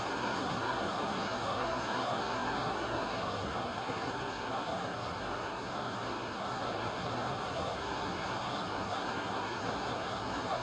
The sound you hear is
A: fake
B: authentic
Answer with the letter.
A